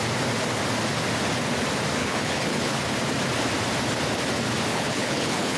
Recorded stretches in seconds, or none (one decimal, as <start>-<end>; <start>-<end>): 0.0-2.0; 2.8-4.7